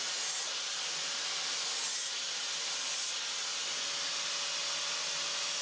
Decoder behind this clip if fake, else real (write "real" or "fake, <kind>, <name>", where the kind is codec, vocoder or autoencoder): real